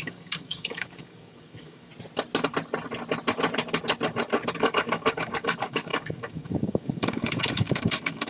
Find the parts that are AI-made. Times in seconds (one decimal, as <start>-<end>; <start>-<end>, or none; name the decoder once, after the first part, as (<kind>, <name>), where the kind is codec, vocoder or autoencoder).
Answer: 0.0-1.9 (codec, DAC); 4.6-8.3